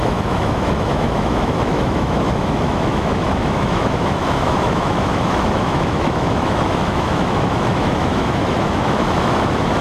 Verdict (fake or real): fake